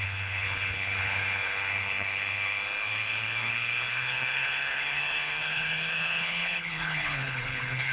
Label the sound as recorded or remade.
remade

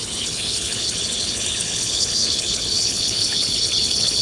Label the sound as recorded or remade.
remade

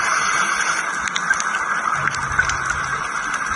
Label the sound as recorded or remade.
recorded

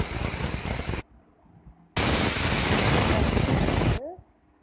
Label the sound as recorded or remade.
recorded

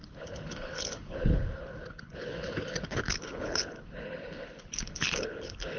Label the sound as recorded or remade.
remade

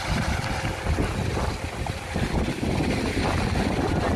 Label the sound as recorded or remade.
recorded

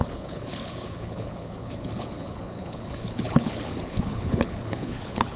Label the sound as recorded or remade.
remade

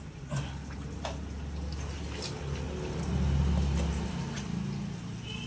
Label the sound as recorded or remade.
recorded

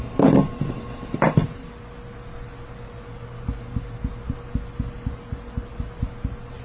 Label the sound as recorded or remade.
recorded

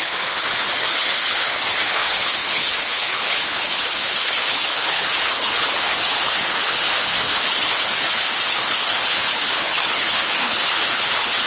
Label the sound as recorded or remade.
remade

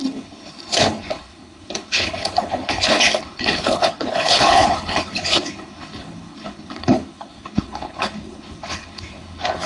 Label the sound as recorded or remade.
remade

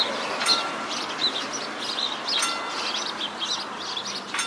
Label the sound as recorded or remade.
recorded